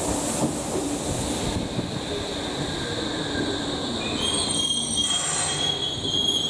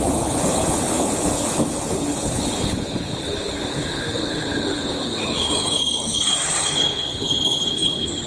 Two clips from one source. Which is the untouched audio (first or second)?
first